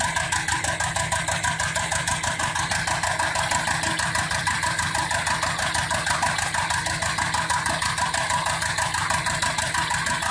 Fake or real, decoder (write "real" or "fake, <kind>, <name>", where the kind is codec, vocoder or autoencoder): real